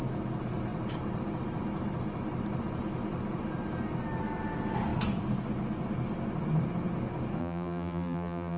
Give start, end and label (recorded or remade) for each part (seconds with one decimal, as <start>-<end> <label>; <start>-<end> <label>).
0.0-7.4 recorded; 7.4-8.6 remade